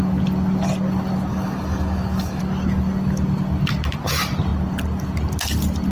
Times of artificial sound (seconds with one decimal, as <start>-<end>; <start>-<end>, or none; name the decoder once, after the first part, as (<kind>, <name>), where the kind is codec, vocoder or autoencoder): 1.3-2.4 (codec, DAC)